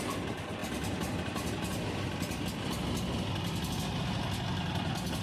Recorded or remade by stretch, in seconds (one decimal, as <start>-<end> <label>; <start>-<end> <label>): 0.0-5.2 recorded